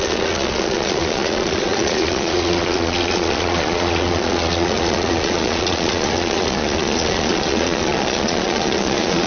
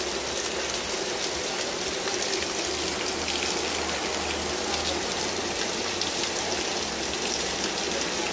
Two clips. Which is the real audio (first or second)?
second